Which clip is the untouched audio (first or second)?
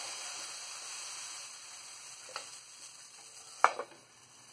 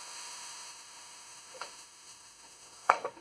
first